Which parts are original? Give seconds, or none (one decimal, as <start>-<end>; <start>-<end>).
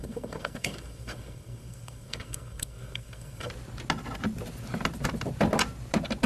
3.5-6.3